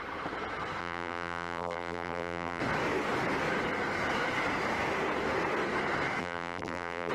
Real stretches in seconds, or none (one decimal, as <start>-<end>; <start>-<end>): 0.0-0.8; 2.6-6.2